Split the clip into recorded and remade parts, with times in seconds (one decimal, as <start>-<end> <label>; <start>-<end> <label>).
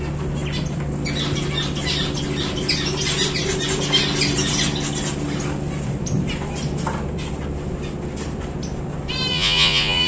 0.0-9.3 recorded; 9.3-10.1 remade